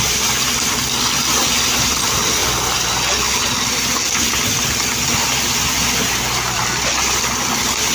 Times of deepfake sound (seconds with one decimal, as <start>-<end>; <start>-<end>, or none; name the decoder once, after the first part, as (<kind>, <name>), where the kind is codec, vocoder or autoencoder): none